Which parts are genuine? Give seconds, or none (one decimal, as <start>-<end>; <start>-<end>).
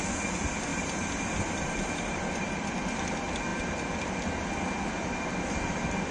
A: 0.0-0.7; 3.0-6.1